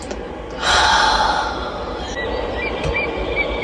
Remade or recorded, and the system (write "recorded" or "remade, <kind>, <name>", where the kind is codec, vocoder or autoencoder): recorded